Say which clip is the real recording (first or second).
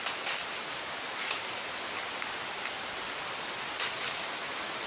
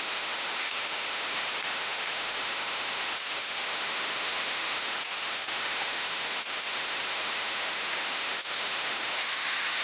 first